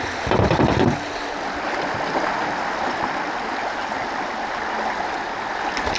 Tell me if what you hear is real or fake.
real